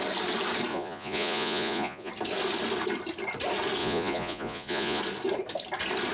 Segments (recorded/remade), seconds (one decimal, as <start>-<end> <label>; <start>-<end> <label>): 0.0-0.7 recorded; 0.7-2.1 remade; 2.1-3.8 recorded; 3.8-5.0 remade; 5.0-6.1 recorded